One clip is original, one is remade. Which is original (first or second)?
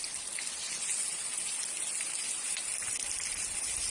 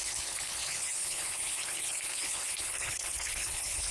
first